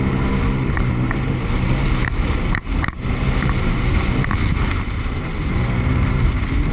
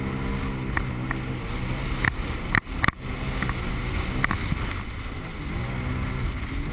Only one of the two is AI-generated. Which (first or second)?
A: first